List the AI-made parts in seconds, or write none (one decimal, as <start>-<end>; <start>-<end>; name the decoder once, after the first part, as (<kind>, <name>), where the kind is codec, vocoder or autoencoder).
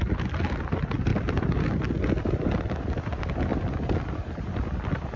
1.1-1.9 (vocoder, BigVGAN v2)